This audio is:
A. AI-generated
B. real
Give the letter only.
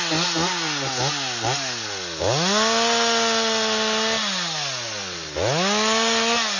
B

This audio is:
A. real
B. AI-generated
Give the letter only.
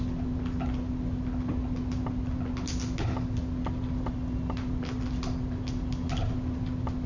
A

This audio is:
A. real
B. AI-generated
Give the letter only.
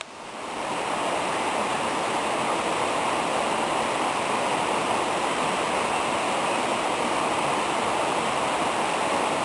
A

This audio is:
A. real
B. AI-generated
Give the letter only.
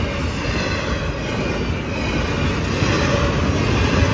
A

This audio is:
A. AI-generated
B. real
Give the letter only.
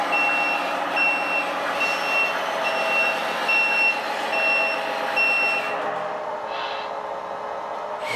B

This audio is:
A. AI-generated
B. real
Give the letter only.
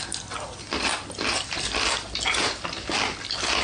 B